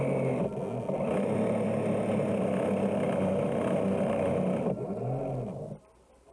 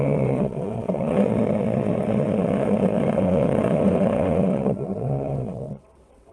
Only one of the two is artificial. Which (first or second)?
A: second